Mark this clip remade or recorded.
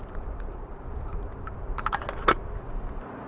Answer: recorded